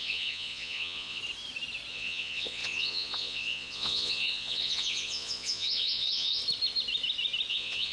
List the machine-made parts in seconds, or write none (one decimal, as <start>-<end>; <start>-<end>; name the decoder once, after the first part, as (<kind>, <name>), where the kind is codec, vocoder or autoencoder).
0.0-1.2 (vocoder, Vocos); 1.9-6.4; 7.5-7.9